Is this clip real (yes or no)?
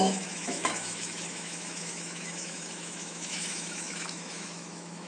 no